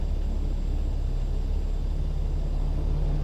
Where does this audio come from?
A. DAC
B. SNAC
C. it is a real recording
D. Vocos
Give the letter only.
C